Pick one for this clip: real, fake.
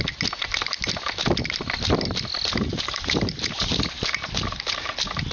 real